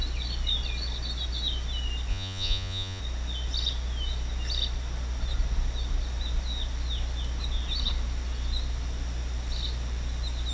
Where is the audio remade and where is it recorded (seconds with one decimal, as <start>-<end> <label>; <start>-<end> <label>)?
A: 0.0-2.1 recorded; 2.1-3.0 remade; 3.0-10.5 recorded

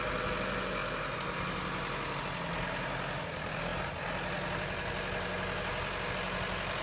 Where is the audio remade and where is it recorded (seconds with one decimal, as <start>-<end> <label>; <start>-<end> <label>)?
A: 0.0-6.8 recorded

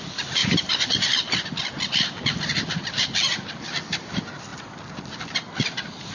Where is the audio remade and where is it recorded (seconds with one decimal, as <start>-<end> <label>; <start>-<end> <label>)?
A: 0.0-6.1 recorded